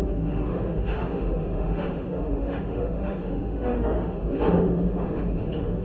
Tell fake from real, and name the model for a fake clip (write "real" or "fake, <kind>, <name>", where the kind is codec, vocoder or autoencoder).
fake, autoencoder, DAC-VAE